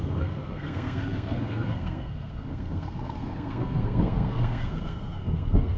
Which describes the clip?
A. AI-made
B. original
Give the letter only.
A